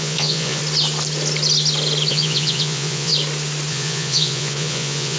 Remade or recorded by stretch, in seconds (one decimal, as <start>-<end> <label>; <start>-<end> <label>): 0.0-0.6 remade; 0.6-2.1 recorded; 2.1-3.1 remade; 3.1-3.7 recorded; 3.7-5.2 remade